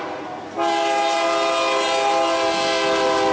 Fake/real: real